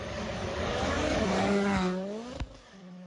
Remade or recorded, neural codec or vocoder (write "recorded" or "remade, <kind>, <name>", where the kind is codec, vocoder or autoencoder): remade, codec, DAC